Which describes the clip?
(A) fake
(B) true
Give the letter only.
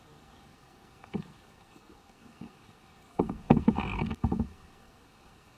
A